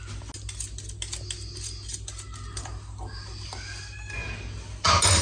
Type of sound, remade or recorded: recorded